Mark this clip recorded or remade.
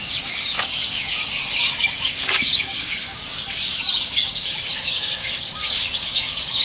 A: remade